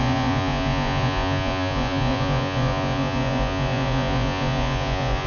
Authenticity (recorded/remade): remade